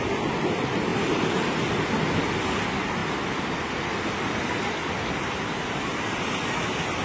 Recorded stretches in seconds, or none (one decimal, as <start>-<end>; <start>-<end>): 0.0-7.0